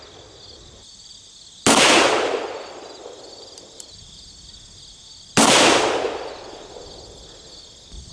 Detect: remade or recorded recorded